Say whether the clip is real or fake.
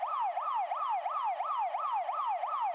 real